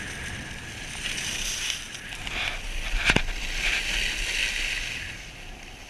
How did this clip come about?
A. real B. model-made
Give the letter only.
A